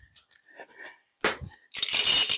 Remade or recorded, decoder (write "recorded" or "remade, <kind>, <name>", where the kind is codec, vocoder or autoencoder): recorded